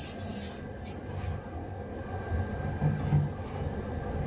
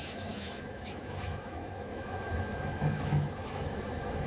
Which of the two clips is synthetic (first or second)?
second